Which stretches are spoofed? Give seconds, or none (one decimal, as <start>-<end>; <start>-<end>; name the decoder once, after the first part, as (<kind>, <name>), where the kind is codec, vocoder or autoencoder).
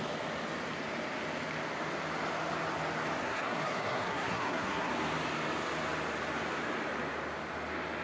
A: 3.2-4.9 (codec, SNAC)